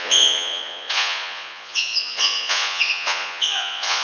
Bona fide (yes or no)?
no